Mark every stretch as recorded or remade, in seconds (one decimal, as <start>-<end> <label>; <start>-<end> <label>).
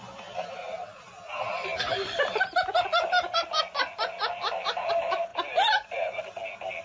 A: 0.0-0.6 recorded; 0.6-1.2 remade; 1.2-6.8 recorded